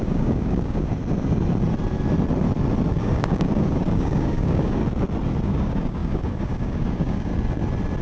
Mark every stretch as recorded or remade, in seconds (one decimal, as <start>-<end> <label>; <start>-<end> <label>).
0.0-1.0 remade; 1.0-2.9 recorded; 2.9-4.8 remade; 4.8-5.4 recorded; 5.4-7.3 remade; 7.3-8.0 recorded